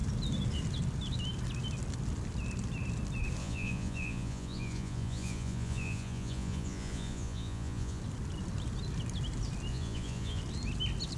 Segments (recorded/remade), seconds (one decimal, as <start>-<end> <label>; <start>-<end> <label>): 0.0-3.4 recorded; 3.4-8.0 remade; 8.0-9.7 recorded; 9.7-10.4 remade; 10.4-11.2 recorded